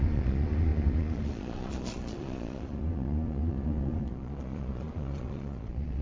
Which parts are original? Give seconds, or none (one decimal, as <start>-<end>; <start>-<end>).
none